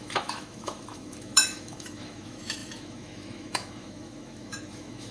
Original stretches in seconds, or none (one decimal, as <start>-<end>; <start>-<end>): none